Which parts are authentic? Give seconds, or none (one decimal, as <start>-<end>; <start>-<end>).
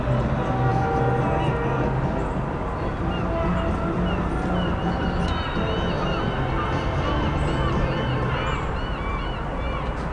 0.0-10.1